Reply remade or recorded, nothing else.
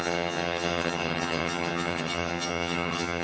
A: remade